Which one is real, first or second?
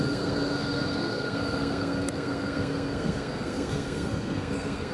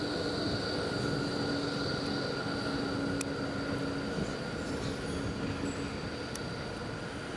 second